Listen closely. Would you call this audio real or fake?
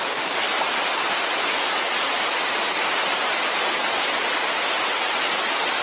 real